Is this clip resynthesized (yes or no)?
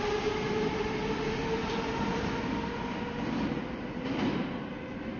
no